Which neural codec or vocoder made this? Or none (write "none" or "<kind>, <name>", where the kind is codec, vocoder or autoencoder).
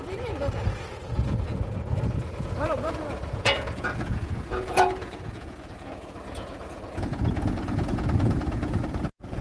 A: vocoder, Vocos